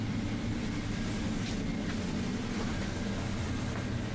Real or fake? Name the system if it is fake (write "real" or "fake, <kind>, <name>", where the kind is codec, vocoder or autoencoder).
real